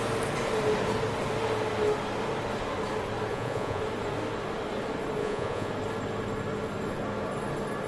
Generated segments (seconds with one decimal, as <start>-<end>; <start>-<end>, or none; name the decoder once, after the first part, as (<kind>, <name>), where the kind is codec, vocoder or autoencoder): 3.3-3.8 (vocoder, Vocos); 5.2-5.7